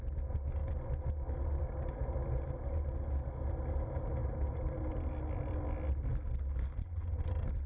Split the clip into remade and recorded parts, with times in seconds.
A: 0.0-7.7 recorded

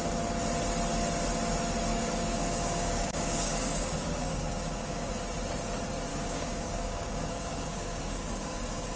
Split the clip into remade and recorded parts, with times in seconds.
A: 0.0-1.9 recorded; 1.9-5.1 remade; 5.1-6.1 recorded; 6.1-9.0 remade

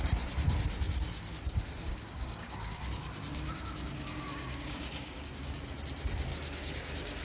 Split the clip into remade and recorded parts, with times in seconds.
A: 0.0-1.9 recorded; 1.9-2.8 remade; 2.8-3.3 recorded; 3.3-5.3 remade; 5.3-6.3 recorded; 6.3-7.2 remade

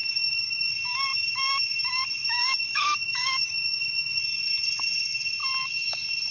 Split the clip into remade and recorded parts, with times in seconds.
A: 0.0-0.7 remade; 0.7-2.4 recorded; 2.4-4.2 remade; 4.2-6.3 recorded

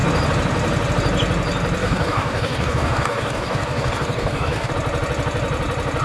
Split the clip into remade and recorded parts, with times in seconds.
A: 0.0-1.8 recorded; 1.8-4.7 remade; 4.7-6.0 recorded

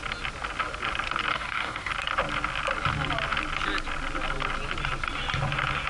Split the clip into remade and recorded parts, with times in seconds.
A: 0.0-1.3 recorded; 1.3-1.9 remade; 1.9-5.9 recorded

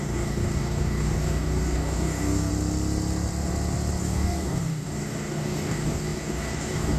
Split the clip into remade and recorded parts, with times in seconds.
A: 0.0-2.5 remade; 2.5-4.0 recorded; 4.0-7.0 remade